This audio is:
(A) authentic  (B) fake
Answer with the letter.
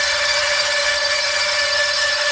B